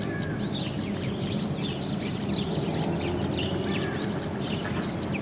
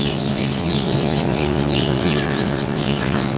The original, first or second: first